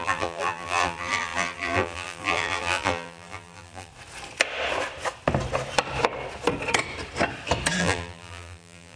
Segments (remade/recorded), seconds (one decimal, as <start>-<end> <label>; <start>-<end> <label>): 0.0-3.9 remade; 3.9-7.8 recorded; 7.8-9.0 remade